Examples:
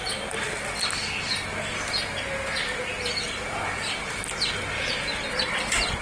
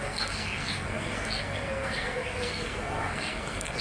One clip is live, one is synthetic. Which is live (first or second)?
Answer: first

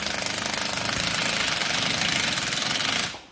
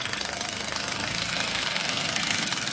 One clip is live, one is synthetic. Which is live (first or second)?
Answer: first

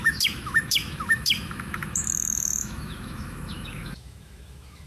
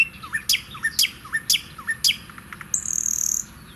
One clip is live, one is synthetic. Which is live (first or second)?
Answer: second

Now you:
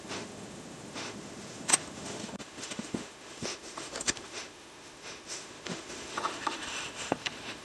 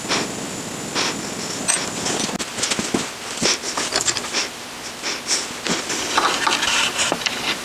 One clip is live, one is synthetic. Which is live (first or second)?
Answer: second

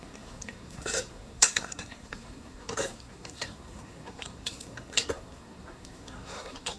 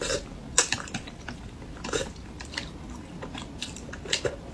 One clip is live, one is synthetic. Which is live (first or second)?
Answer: second